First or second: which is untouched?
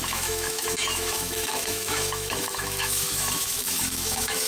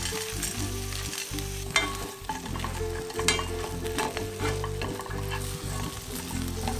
second